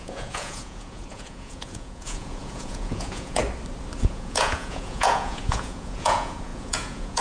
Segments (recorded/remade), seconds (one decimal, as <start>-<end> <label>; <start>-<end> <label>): 0.0-3.4 remade; 3.4-4.0 recorded; 4.0-7.2 remade